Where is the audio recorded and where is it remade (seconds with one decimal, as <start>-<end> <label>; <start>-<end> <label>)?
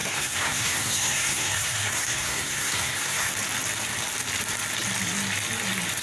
0.0-3.3 remade; 3.3-6.0 recorded